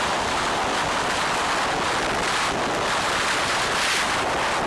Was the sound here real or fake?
real